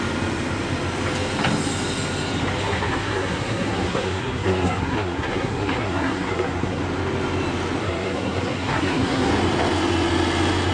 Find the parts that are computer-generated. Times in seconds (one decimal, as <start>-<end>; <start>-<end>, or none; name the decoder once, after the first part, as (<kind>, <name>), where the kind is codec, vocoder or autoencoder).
2.6-6.8 (codec, SNAC); 7.8-9.3